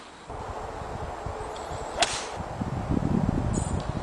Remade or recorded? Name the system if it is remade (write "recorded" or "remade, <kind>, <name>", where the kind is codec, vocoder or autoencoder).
recorded